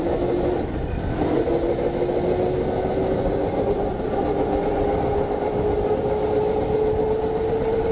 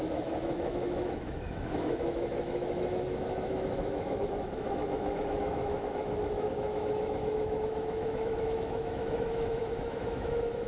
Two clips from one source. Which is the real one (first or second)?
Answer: first